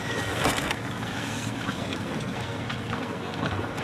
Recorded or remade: remade